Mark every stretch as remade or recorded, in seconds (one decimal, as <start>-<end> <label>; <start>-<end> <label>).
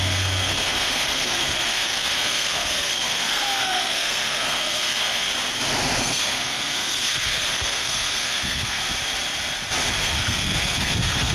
0.0-5.3 remade; 5.3-6.0 recorded; 6.0-8.8 remade; 8.8-9.9 recorded; 9.9-11.3 remade